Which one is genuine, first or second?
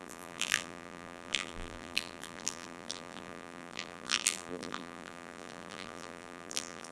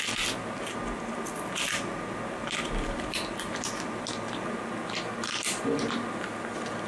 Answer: second